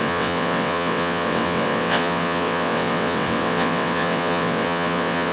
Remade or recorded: remade